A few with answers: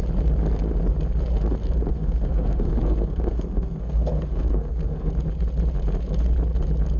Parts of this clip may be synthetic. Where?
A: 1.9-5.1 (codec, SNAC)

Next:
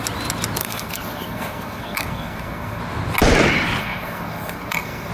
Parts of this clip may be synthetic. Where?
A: 0.6-2.8 (codec, SNAC); 3.8-5.1

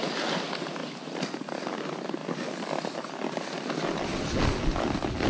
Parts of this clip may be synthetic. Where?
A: none

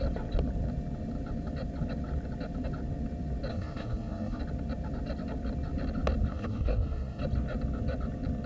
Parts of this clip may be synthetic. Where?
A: 3.5-4.4 (codec, SNAC); 6.3-7.2